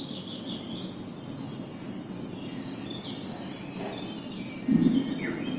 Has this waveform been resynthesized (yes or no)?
no